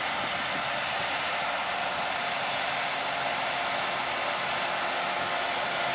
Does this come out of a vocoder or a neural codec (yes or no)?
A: no